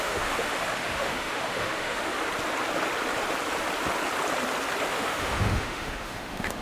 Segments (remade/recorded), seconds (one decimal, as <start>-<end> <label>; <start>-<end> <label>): 0.0-2.1 remade; 2.1-4.9 recorded; 4.9-6.6 remade